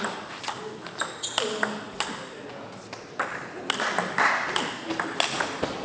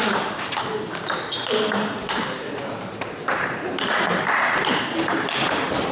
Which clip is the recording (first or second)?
first